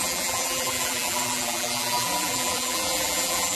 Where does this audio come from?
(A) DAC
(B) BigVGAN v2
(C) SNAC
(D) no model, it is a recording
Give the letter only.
B